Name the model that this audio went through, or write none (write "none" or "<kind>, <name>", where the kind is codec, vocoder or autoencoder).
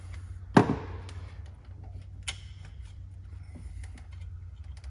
none